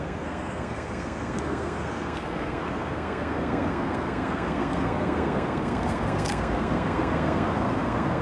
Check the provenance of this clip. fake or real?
fake